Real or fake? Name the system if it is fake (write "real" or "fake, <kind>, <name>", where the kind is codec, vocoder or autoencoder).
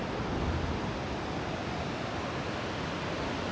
real